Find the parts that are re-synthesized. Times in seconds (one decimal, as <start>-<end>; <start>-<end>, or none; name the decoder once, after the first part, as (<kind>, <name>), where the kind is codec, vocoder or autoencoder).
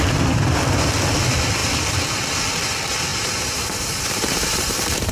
3.1-5.1 (vocoder, BigVGAN v2)